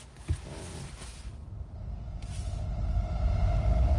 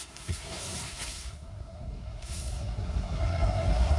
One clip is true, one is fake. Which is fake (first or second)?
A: second